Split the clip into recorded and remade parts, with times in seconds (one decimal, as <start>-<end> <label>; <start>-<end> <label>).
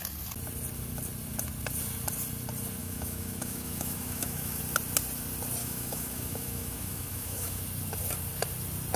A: 0.0-2.8 recorded; 2.8-4.6 remade; 4.6-5.6 recorded; 5.6-7.6 remade; 7.6-9.0 recorded